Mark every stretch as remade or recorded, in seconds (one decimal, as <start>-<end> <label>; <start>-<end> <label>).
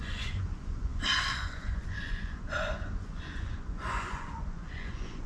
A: 0.0-5.3 remade